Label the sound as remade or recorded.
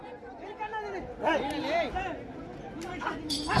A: recorded